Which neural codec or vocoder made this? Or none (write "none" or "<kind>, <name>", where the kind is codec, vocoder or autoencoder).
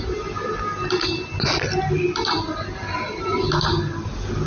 none